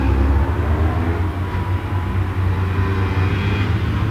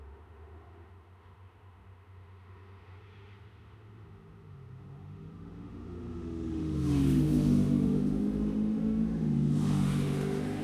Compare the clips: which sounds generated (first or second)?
second